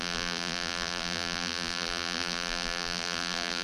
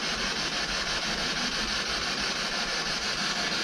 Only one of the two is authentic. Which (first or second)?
second